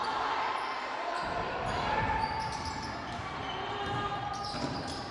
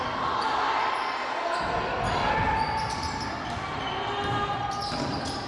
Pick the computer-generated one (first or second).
first